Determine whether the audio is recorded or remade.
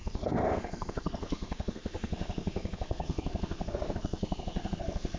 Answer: remade